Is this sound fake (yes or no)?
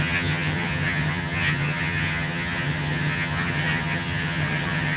yes